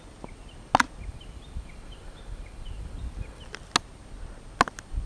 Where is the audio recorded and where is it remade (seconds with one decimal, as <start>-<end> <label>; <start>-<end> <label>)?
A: 0.0-1.1 recorded; 1.1-3.4 remade; 3.4-5.1 recorded